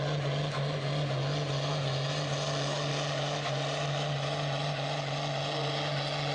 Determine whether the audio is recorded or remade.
recorded